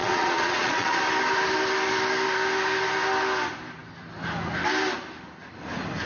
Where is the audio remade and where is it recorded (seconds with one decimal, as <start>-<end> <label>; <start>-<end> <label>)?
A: 0.0-1.0 remade; 1.0-6.1 recorded